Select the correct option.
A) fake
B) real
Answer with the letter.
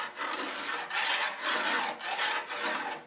B